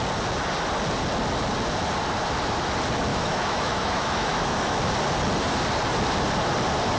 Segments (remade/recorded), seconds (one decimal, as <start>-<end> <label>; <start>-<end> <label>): 0.0-3.1 recorded; 3.1-4.8 remade; 4.8-7.0 recorded